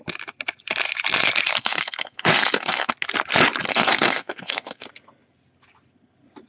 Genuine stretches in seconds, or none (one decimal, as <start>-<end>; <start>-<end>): 0.0-1.6; 2.9-3.7; 4.9-6.5